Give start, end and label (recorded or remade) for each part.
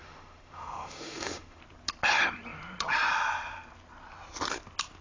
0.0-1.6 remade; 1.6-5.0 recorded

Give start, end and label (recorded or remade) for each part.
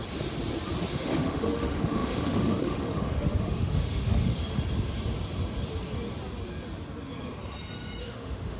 0.0-0.9 recorded; 0.9-4.4 remade; 4.4-8.0 recorded; 8.0-8.6 remade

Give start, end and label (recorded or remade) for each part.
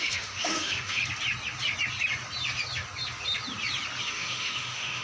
0.0-1.0 remade; 1.0-4.0 recorded; 4.0-5.0 remade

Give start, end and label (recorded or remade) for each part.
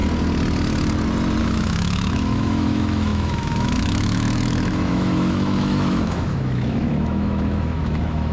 0.0-1.4 recorded; 1.4-8.3 remade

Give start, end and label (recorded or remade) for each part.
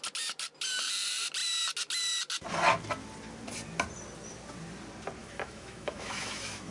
0.0-5.2 recorded; 5.2-6.7 remade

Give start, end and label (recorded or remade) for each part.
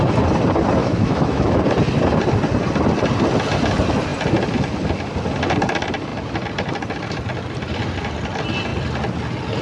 0.0-0.8 recorded; 0.8-1.6 remade; 1.6-9.6 recorded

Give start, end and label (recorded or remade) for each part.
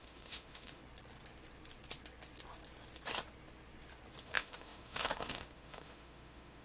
0.0-0.8 remade; 0.8-4.2 recorded; 4.2-6.6 remade